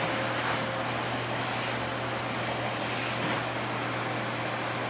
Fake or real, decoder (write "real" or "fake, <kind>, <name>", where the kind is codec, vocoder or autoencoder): real